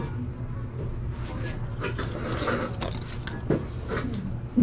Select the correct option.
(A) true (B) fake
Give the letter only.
A